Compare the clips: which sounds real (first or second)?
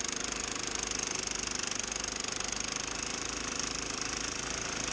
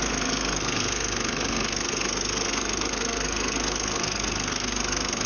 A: first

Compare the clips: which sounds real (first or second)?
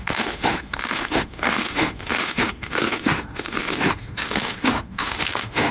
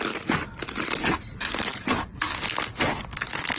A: second